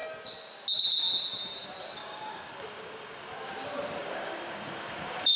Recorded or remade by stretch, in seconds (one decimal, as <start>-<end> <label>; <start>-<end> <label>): 0.0-2.0 recorded; 2.0-3.5 remade; 3.5-4.0 recorded; 4.0-5.4 remade